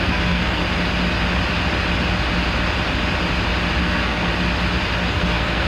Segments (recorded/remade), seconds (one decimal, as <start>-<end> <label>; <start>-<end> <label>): 0.0-0.6 remade; 0.6-3.8 recorded; 3.8-4.3 remade; 4.3-5.1 recorded; 5.1-5.7 remade